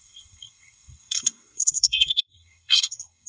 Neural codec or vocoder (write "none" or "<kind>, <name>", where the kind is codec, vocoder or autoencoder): codec, SNAC